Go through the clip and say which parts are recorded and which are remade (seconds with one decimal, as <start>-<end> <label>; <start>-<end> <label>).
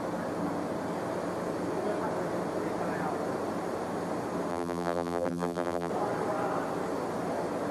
0.0-4.5 recorded; 4.5-5.9 remade; 5.9-7.7 recorded